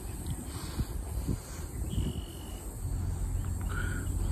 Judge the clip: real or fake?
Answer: real